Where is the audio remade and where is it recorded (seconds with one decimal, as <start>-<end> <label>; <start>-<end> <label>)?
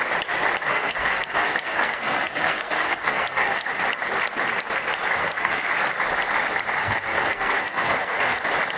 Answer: 0.0-0.7 recorded; 0.7-3.7 remade; 3.7-5.2 recorded; 5.2-5.7 remade; 5.7-6.8 recorded; 6.8-8.4 remade; 8.4-8.8 recorded